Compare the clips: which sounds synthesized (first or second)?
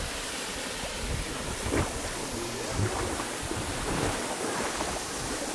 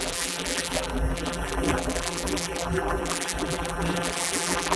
second